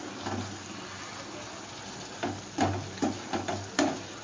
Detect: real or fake real